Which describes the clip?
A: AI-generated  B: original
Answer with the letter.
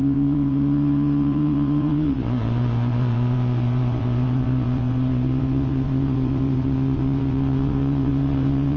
A